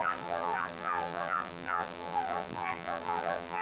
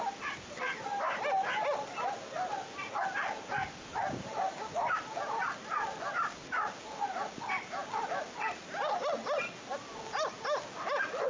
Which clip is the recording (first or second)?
second